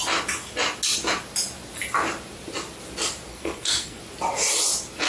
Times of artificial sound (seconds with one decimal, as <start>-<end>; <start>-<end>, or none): 3.3-4.0